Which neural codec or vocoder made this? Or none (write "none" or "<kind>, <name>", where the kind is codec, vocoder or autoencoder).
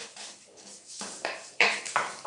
codec, DAC